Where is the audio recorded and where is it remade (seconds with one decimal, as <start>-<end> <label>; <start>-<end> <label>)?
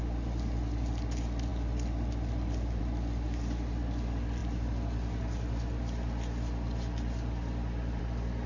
0.0-8.5 recorded